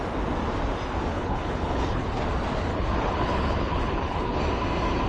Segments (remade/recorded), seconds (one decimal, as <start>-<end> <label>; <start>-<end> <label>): 0.0-1.1 recorded; 1.1-2.2 remade; 2.2-2.7 recorded; 2.7-4.4 remade; 4.4-5.1 recorded